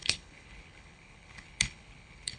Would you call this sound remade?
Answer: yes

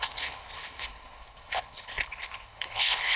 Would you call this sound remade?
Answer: yes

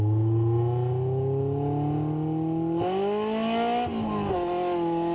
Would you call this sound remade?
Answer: no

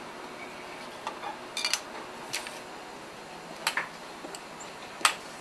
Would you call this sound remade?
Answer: no